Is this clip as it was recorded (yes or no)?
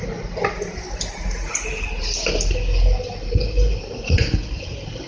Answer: yes